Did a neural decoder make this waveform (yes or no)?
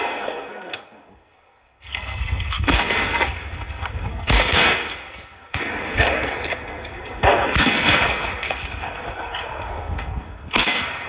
yes